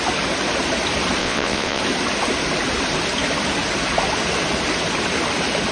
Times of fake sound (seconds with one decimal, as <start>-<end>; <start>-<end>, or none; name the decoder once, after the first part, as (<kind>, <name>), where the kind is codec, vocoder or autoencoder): 1.2-1.8 (vocoder, WaveNeXt)